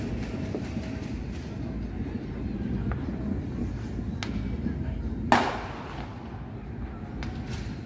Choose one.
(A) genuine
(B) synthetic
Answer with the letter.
A